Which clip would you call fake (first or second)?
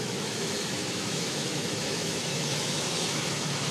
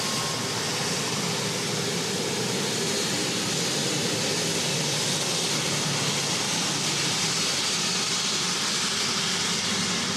first